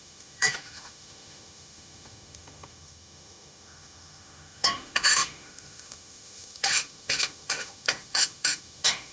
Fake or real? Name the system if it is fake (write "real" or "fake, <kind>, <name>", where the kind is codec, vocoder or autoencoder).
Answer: fake, autoencoder, DAC-VAE